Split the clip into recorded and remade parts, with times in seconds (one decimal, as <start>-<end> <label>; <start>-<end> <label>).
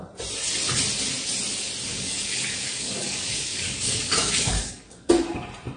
0.0-1.9 recorded; 1.9-5.1 remade; 5.1-5.8 recorded